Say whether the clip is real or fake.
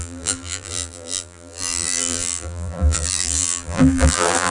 fake